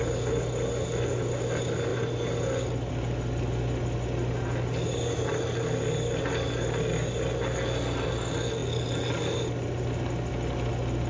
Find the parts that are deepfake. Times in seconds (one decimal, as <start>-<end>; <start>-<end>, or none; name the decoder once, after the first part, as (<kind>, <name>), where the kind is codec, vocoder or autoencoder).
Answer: none